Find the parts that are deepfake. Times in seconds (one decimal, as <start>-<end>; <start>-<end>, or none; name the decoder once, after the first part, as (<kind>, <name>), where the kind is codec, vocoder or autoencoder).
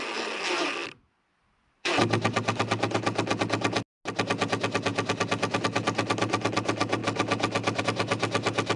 none